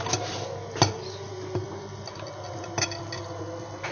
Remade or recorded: recorded